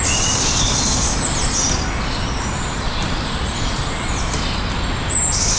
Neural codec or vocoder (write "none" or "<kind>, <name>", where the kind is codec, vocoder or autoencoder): none